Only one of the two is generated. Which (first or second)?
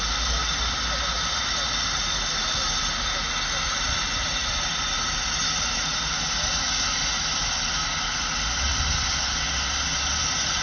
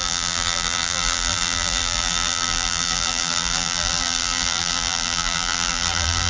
second